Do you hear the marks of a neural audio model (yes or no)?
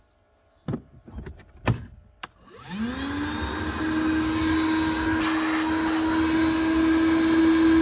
no